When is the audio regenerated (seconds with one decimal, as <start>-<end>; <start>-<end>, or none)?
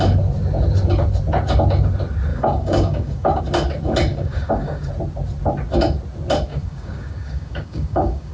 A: 2.3-3.4; 4.1-4.9; 6.5-8.3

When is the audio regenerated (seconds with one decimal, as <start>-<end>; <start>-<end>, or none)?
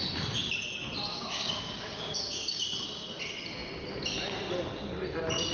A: 1.1-2.2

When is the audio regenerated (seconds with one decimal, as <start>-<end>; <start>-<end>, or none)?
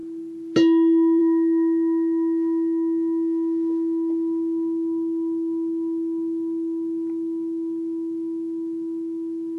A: none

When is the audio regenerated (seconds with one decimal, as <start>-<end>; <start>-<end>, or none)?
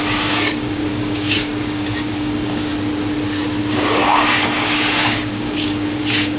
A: 0.0-2.7; 3.7-6.4